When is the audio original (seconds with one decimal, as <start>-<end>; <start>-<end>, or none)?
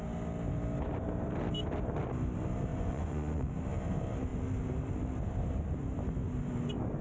0.0-2.7; 3.5-7.0